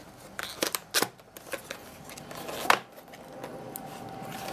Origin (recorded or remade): recorded